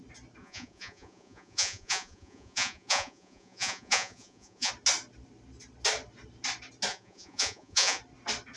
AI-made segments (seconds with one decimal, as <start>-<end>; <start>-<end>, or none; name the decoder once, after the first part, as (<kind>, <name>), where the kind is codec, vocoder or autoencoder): 0.4-4.7 (vocoder, Vocos); 6.9-8.0